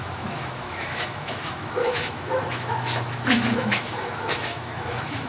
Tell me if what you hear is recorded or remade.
remade